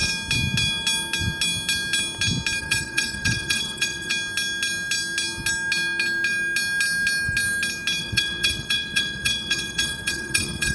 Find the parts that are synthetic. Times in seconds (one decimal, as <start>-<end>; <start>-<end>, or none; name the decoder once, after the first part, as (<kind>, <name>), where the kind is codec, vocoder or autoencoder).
2.6-4.1 (vocoder, WaveNeXt); 8.0-10.7